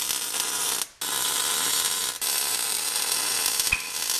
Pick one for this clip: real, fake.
real